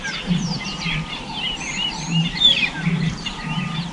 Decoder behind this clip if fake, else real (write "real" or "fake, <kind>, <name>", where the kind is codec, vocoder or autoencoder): fake, vocoder, BigVGAN v2